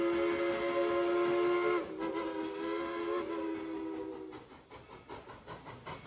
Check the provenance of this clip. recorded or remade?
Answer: recorded